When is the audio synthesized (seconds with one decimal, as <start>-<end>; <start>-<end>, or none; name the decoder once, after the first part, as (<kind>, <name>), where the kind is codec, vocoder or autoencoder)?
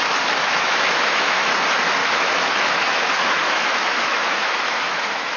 0.4-1.5 (autoencoder, DAC-VAE); 2.0-5.4